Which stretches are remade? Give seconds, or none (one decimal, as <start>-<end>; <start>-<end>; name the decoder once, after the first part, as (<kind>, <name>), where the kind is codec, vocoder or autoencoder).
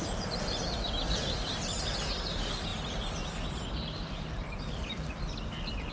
none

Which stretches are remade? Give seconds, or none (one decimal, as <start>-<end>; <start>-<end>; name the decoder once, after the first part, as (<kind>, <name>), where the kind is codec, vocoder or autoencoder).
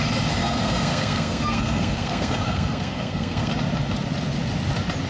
0.4-3.5 (codec, SNAC)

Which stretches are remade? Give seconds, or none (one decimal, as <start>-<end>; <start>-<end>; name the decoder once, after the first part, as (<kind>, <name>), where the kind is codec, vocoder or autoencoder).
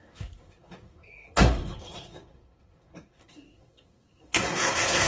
0.0-5.1 (codec, SNAC)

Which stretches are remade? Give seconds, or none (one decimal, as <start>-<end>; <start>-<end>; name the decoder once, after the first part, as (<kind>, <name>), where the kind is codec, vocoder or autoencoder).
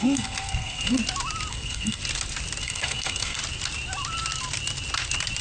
0.0-1.0 (codec, SNAC); 1.5-2.0; 2.6-3.4